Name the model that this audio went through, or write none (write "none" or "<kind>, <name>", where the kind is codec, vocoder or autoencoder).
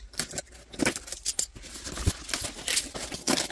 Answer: none